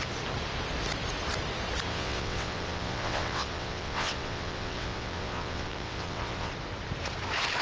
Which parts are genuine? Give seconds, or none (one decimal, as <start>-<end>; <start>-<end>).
0.0-1.9; 6.5-7.6